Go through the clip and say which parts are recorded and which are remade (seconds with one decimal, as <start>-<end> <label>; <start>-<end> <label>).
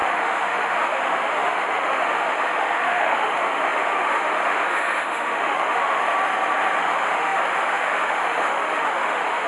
0.0-6.0 remade; 6.0-6.8 recorded; 6.8-9.5 remade